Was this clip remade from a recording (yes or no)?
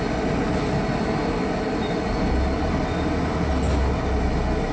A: no